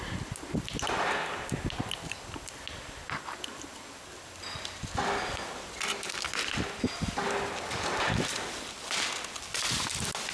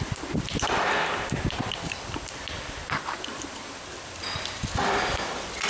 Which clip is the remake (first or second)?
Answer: second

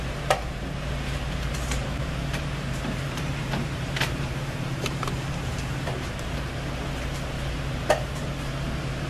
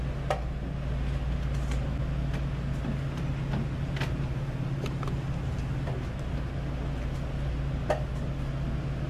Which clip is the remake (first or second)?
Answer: first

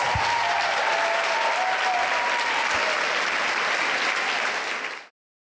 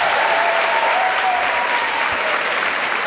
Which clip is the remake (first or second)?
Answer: second